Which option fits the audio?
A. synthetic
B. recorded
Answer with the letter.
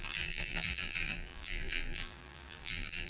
A